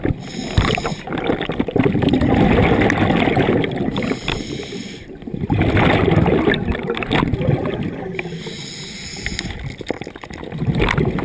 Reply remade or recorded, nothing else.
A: recorded